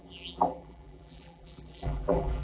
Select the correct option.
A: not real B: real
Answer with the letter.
A